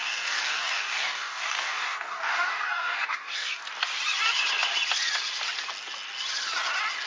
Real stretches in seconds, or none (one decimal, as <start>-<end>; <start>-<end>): 3.6-7.1